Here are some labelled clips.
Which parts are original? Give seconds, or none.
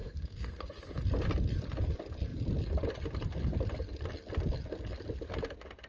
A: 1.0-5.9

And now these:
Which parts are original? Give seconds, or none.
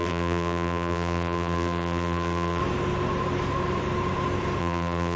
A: 2.6-4.6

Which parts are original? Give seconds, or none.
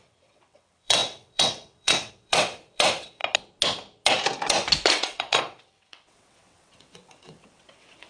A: 3.2-4.9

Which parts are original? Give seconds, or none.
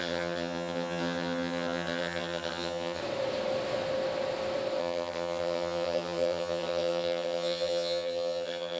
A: 3.0-4.8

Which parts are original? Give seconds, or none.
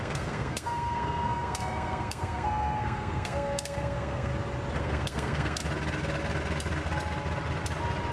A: 4.3-4.8; 5.6-8.1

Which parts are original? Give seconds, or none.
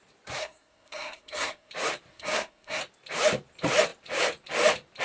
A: 0.0-0.4; 1.7-2.1; 2.8-5.0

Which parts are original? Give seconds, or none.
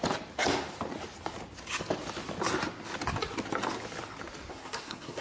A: 0.0-4.5